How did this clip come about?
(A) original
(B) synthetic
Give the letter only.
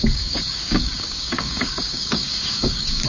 B